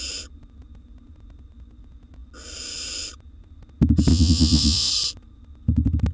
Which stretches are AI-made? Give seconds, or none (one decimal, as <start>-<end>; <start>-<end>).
4.1-4.9